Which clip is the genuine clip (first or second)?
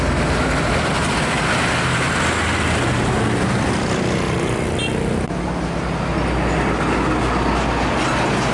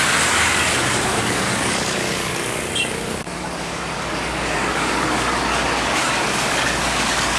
first